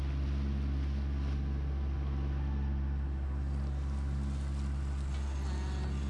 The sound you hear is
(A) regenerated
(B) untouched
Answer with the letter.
B